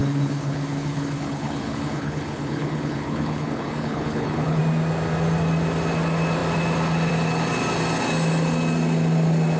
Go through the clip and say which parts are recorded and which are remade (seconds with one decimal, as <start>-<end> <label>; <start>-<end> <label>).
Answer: 0.0-4.6 remade; 4.6-9.6 recorded